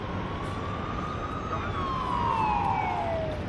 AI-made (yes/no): no